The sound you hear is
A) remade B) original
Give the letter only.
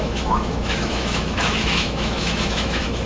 A